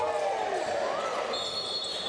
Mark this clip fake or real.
real